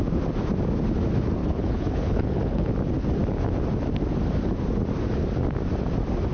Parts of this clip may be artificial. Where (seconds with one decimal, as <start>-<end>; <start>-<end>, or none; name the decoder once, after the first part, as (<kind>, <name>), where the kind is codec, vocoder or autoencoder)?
1.4-2.7 (codec, HILCodec)